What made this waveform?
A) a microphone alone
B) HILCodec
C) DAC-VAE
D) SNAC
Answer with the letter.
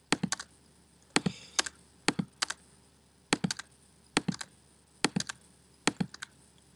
A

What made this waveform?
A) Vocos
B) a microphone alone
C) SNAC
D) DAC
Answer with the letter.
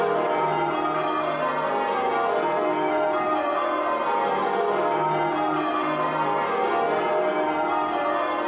B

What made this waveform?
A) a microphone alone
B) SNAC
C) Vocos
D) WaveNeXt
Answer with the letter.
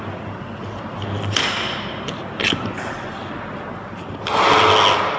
A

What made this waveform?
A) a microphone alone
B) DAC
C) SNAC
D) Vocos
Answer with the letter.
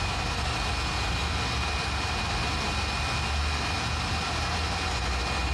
A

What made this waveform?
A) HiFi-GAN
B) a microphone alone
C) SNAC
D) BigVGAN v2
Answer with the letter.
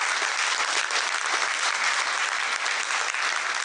B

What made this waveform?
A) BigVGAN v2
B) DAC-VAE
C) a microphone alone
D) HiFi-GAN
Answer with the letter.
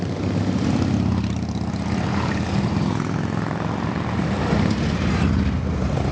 C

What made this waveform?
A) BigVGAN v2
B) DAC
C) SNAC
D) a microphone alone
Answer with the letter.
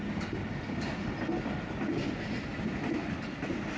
D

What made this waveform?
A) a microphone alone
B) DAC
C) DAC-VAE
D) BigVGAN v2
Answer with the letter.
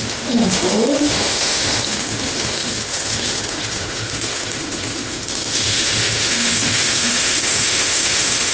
C